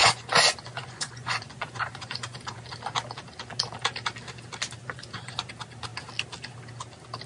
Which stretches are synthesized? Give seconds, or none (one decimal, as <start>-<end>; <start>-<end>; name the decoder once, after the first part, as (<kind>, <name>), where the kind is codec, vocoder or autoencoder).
0.0-2.7 (vocoder, Vocos); 4.8-5.5